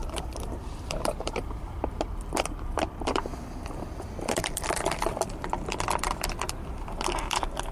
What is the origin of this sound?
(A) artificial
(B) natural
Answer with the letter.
A